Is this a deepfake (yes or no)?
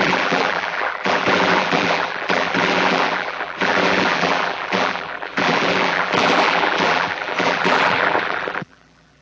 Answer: yes